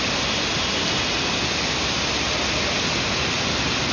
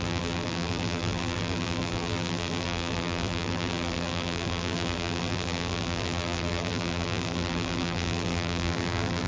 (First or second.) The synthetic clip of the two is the second